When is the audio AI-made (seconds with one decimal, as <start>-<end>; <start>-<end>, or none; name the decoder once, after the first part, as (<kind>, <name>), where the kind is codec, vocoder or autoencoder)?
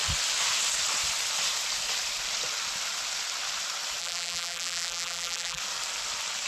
4.0-5.6 (vocoder, BigVGAN v2)